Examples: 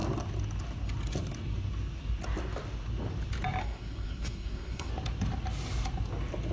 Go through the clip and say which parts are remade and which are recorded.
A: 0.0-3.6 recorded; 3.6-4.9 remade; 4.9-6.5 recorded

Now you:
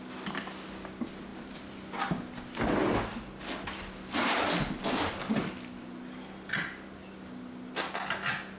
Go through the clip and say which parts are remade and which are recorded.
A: 0.0-8.6 recorded

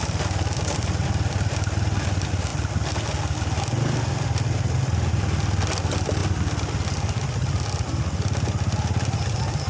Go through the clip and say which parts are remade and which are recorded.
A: 0.0-9.7 recorded

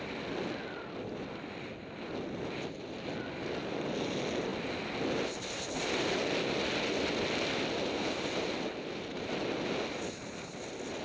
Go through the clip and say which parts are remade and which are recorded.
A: 0.0-11.0 recorded

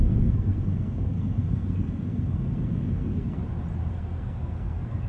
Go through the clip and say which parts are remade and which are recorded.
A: 0.0-3.4 remade; 3.4-3.9 recorded; 3.9-5.1 remade

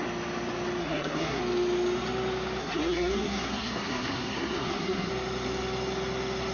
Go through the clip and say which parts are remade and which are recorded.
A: 0.0-0.8 recorded; 0.8-1.4 remade; 1.4-2.6 recorded; 2.6-5.1 remade; 5.1-6.5 recorded

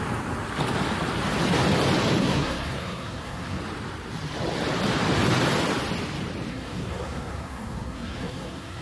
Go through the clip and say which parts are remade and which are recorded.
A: 0.0-2.2 recorded; 2.2-3.6 remade; 3.6-6.5 recorded; 6.5-8.8 remade

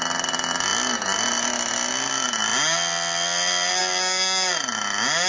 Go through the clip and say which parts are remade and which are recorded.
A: 0.0-5.3 recorded